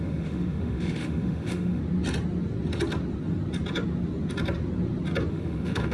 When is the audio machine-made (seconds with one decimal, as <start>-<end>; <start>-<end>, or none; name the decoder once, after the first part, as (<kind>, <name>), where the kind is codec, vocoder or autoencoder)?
0.0-1.8 (autoencoder, DAC-VAE); 5.3-5.9